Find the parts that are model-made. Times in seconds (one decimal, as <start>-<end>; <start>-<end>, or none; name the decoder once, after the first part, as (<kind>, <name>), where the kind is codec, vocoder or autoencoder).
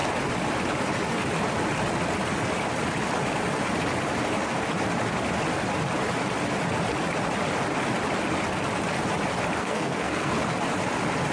9.6-10.3 (codec, SNAC)